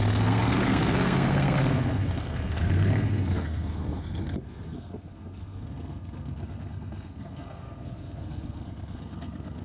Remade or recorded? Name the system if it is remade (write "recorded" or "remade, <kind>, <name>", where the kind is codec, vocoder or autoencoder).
remade, codec, SNAC